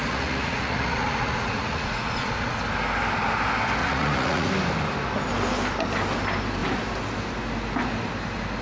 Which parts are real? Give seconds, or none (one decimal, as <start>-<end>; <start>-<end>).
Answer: 2.6-3.8; 4.5-8.6